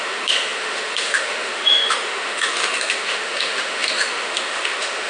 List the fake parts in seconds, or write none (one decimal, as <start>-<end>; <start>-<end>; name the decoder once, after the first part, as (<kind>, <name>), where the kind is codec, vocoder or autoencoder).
0.0-5.1 (autoencoder, DAC-VAE)